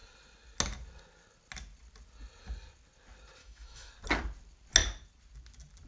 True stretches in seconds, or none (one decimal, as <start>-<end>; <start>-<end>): 0.0-3.4; 3.9-5.9